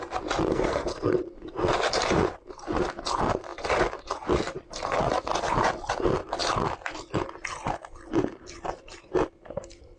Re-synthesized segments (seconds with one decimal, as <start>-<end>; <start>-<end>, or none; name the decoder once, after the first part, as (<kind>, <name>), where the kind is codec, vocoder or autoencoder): 0.5-1.2 (codec, SNAC)